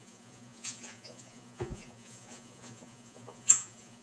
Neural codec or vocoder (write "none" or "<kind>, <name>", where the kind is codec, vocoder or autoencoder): vocoder, Vocos